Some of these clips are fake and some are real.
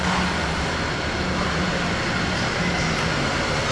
real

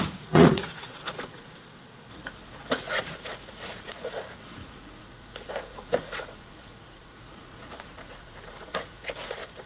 fake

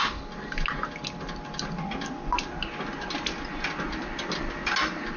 real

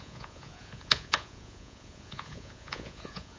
fake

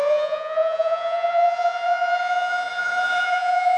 fake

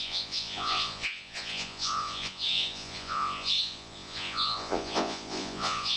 fake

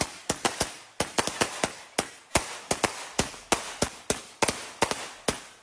real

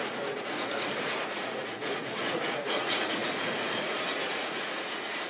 fake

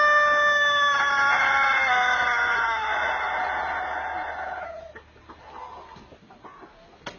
real